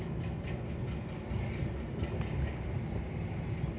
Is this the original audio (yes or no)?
yes